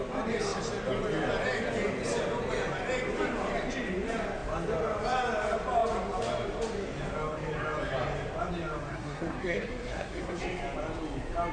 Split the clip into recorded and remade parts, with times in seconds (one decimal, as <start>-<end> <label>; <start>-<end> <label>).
0.0-8.9 recorded; 8.9-10.4 remade; 10.4-11.5 recorded